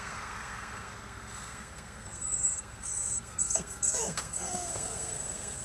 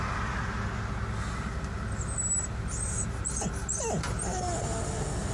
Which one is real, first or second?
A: second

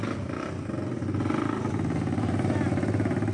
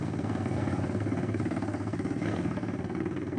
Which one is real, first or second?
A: first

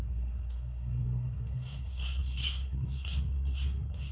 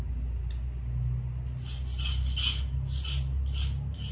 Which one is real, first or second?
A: second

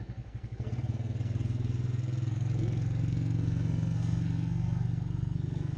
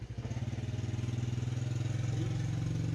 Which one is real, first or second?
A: second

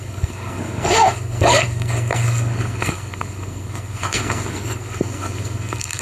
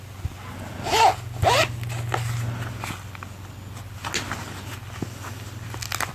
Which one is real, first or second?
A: second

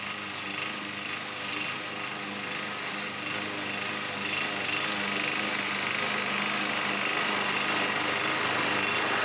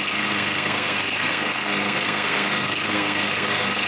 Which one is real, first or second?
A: first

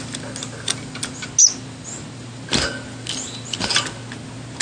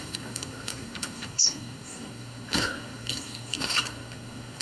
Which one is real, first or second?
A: first